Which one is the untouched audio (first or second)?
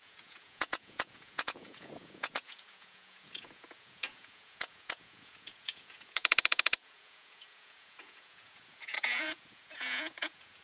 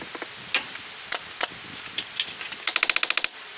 second